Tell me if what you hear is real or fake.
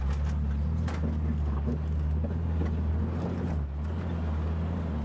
real